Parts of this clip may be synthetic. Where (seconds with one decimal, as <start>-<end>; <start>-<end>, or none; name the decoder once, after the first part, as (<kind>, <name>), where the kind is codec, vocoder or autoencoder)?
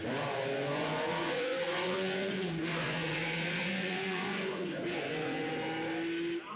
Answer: 0.0-5.5 (vocoder, Vocos)